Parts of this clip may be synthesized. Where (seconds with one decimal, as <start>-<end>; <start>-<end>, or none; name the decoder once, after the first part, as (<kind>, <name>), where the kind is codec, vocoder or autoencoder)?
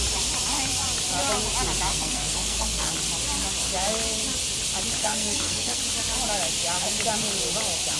1.9-2.9 (codec, SNAC); 5.0-5.8